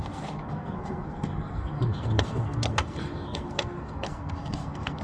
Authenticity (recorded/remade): remade